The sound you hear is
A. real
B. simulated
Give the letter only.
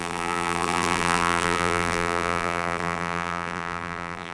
B